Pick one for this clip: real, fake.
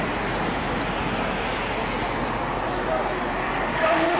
real